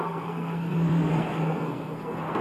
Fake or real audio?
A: fake